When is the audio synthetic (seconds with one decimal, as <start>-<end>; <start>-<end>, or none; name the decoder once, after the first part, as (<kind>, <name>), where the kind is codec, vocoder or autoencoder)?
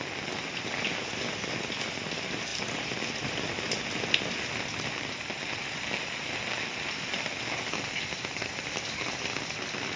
none